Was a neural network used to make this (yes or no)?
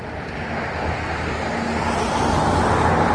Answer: no